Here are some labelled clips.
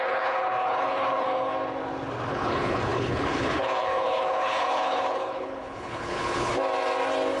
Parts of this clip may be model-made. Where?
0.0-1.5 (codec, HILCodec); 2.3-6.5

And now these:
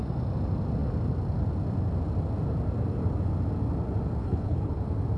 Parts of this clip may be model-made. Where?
4.2-4.8 (codec, HILCodec)

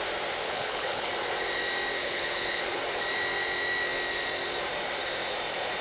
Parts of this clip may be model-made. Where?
0.4-1.1 (codec, HILCodec); 2.0-2.8

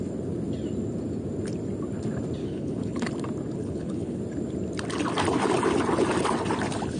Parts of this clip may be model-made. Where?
2.4-3.1 (codec, HILCodec); 3.6-4.2

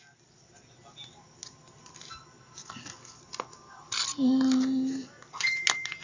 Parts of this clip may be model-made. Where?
none

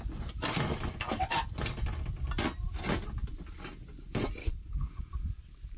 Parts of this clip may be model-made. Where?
4.4-5.0 (codec, HILCodec)

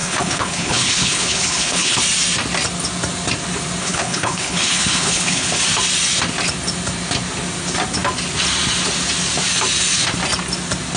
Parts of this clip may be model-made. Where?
0.0-2.0 (codec, HILCodec); 3.8-5.5

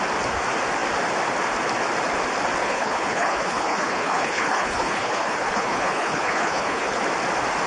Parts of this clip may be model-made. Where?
2.6-7.0 (codec, HILCodec)